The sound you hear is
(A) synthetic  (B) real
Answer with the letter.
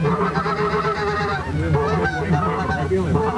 B